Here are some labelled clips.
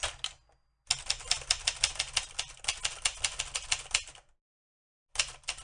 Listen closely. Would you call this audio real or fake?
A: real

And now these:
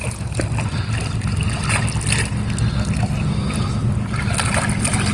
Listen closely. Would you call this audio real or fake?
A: real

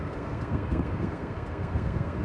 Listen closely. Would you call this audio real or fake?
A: fake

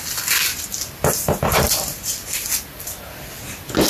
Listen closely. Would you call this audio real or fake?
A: real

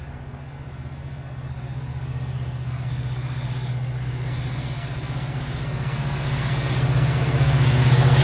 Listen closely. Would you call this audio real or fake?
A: fake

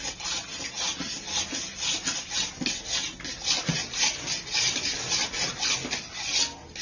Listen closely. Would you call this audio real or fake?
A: real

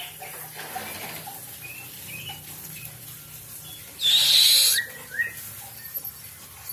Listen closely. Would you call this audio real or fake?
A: real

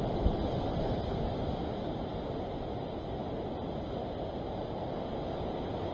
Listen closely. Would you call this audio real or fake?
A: real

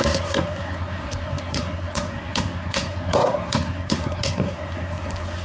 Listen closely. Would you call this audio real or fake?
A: fake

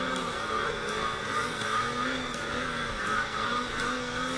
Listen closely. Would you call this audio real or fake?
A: fake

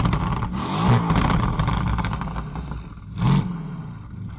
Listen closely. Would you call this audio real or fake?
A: real